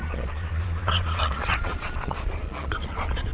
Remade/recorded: remade